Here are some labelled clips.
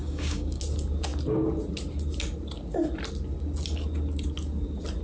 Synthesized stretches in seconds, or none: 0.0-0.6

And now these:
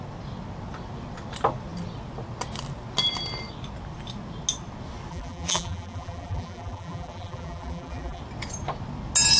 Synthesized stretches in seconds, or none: 5.1-8.2

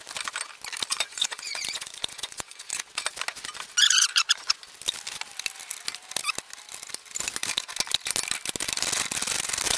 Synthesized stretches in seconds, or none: 0.9-2.7; 3.8-4.6

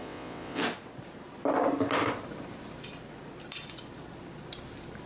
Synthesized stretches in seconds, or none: 0.0-0.6

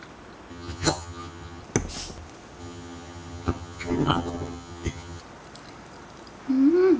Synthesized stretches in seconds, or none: 0.5-1.6; 2.6-5.2

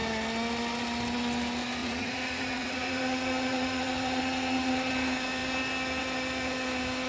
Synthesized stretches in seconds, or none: 1.8-4.9

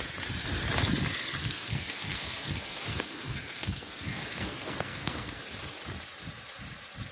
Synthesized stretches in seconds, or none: 1.4-5.4